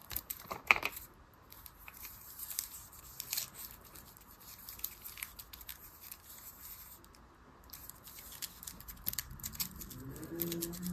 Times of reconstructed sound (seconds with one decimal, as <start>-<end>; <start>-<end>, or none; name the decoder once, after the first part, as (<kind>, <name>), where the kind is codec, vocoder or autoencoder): 0.0-3.0 (vocoder, BigVGAN v2); 5.7-7.1